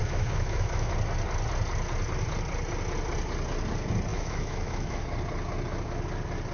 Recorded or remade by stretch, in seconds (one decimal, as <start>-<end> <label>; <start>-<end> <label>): 0.0-0.9 remade; 0.9-4.1 recorded; 4.1-5.0 remade; 5.0-6.5 recorded